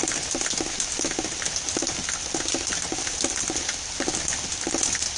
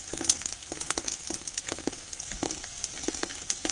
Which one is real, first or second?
first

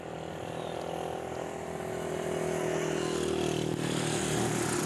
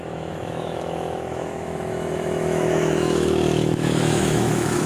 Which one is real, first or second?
first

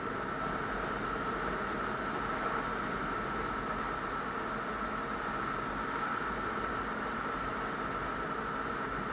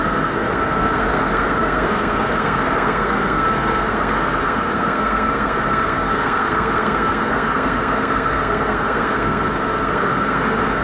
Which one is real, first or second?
first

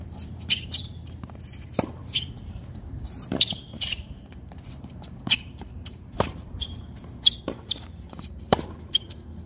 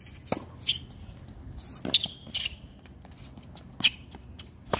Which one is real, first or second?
second